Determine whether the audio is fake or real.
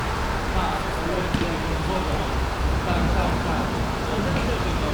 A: real